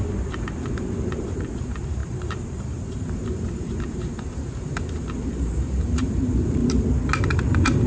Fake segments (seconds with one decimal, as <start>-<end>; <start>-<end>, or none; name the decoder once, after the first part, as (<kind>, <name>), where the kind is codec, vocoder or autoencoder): 0.0-6.6 (vocoder, BigVGAN v2); 7.2-7.9